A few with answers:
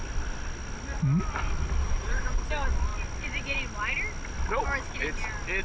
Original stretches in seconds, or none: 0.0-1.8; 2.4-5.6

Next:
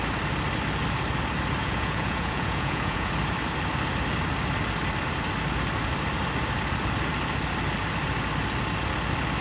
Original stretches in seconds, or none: 0.0-1.6; 3.1-9.4